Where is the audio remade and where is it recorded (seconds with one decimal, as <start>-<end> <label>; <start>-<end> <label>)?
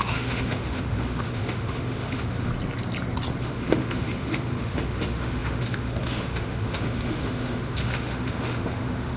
0.0-2.5 remade; 2.5-3.4 recorded; 3.4-9.2 remade